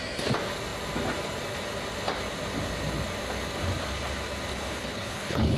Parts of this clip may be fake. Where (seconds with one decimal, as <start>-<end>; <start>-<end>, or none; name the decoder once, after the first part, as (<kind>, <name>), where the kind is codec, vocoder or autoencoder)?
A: 4.5-5.6 (codec, HILCodec)